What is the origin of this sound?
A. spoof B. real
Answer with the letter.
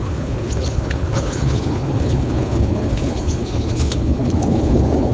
A